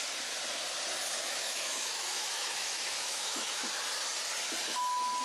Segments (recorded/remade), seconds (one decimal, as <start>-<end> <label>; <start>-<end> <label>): 0.0-1.2 recorded; 1.2-3.6 remade; 3.6-5.2 recorded